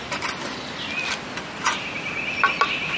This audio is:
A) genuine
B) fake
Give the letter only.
A